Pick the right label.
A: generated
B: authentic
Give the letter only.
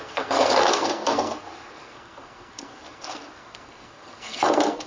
A